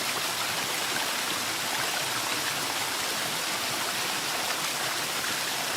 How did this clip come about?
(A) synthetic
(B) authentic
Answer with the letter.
B